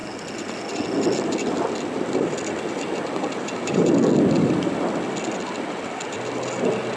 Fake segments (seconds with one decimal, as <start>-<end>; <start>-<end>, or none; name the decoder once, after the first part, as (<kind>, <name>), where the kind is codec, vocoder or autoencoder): none